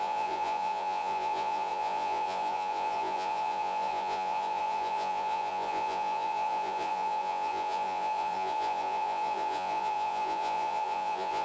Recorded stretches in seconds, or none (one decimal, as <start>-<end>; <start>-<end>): none